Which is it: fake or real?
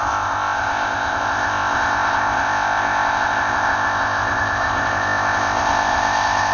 fake